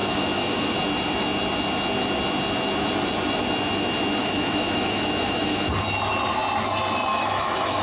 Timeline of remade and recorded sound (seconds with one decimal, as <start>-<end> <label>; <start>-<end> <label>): 0.0-0.7 remade; 0.7-4.2 recorded; 4.2-5.7 remade; 5.7-7.1 recorded; 7.1-7.8 remade